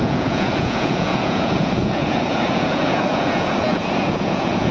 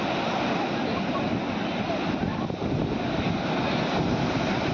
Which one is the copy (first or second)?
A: first